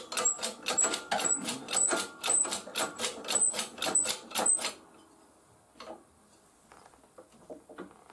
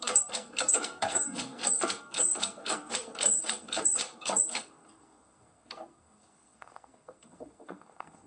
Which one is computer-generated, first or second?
second